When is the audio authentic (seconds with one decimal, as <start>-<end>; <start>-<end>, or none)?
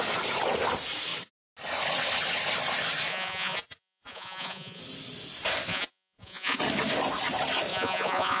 0.0-3.1; 4.8-5.7; 6.6-7.7